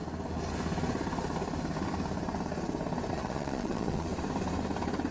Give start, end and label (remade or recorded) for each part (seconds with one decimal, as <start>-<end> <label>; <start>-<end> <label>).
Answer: 0.0-3.1 recorded; 3.1-4.1 remade; 4.1-5.1 recorded

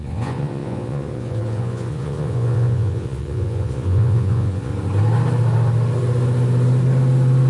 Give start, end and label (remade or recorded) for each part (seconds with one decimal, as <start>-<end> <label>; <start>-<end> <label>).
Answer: 0.0-4.7 remade; 4.7-7.5 recorded

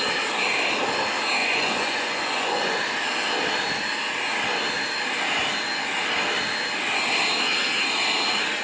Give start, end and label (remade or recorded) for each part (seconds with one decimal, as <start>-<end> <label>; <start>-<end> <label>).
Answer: 0.0-1.4 recorded; 1.4-2.8 remade; 2.8-8.6 recorded

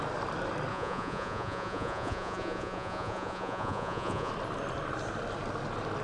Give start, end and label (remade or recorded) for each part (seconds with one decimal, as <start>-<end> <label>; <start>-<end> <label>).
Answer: 0.0-0.7 recorded; 0.7-4.3 remade; 4.3-6.0 recorded

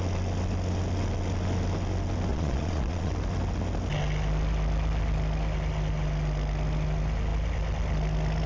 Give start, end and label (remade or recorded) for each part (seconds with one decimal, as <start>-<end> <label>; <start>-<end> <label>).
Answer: 0.0-2.3 recorded; 2.3-3.1 remade; 3.1-8.5 recorded